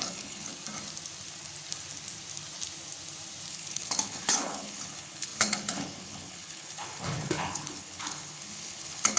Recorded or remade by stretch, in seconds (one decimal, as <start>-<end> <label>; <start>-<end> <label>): 0.0-0.5 remade; 0.5-3.5 recorded; 3.5-9.2 remade